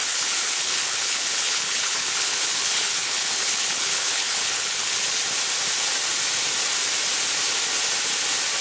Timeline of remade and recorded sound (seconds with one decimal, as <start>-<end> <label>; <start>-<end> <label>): 0.0-5.2 remade; 5.2-8.6 recorded